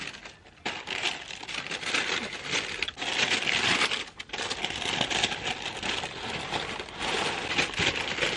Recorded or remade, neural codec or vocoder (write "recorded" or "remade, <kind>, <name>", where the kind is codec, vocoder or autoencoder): recorded